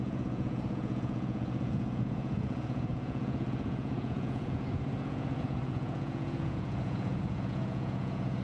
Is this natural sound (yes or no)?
no